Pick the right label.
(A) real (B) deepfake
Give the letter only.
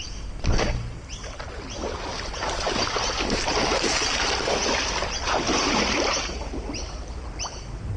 A